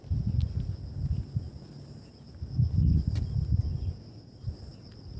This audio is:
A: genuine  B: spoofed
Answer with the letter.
A